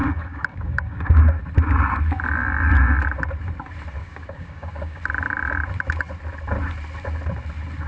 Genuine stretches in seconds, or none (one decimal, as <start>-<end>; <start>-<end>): 1.2-4.0; 5.0-7.9